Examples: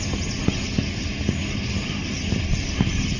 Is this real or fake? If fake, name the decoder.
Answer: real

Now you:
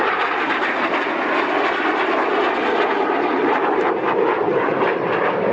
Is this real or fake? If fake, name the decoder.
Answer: real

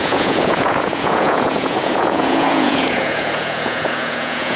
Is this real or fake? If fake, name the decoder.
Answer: fake, vocoder, Vocos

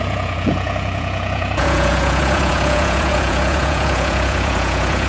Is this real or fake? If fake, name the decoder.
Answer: fake, vocoder, Vocos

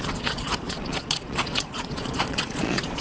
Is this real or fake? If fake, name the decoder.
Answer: fake, vocoder, Vocos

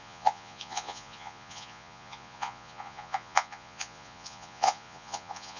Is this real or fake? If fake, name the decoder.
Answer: fake, vocoder, Vocos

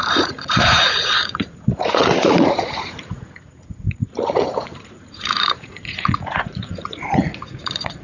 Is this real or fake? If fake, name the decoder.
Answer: fake, vocoder, Vocos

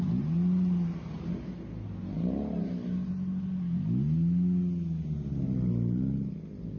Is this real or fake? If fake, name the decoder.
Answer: real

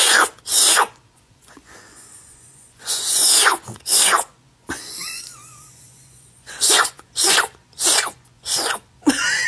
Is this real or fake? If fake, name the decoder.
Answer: fake, vocoder, Vocos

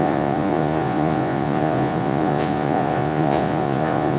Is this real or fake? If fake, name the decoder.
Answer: fake, vocoder, Vocos